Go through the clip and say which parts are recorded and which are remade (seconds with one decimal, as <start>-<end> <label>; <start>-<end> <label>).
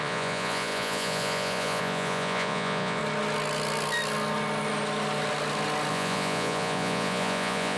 0.0-3.0 remade; 3.0-5.9 recorded; 5.9-7.8 remade